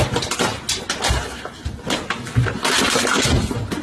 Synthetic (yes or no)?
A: no